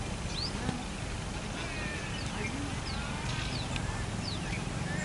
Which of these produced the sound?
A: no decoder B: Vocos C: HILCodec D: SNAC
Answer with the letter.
A